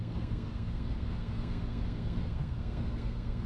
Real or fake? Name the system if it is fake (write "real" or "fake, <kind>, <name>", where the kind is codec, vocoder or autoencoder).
fake, codec, SNAC